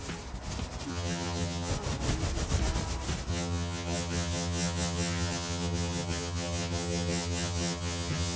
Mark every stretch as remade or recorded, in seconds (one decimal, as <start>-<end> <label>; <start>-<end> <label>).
0.0-0.9 recorded; 0.9-1.7 remade; 1.7-3.3 recorded; 3.3-8.4 remade